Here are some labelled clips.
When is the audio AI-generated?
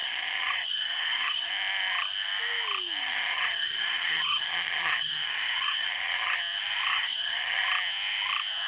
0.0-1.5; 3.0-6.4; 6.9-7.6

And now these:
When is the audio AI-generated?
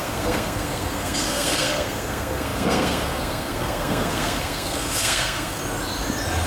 0.0-5.6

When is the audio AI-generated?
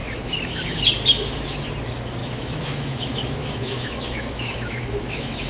0.0-0.8; 2.2-5.5